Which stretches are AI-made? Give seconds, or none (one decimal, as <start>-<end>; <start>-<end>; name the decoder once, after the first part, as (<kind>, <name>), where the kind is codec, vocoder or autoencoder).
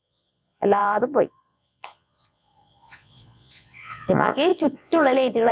0.0-5.5 (vocoder, Vocos)